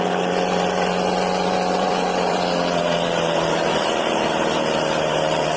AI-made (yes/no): yes